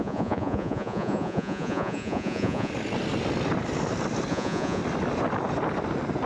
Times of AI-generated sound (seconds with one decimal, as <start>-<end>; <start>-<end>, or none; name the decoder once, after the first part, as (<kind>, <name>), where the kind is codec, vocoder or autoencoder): 0.0-2.7 (vocoder, Vocos); 4.3-4.8